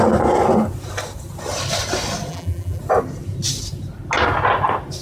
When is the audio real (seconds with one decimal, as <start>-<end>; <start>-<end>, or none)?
0.0-2.3; 2.8-5.0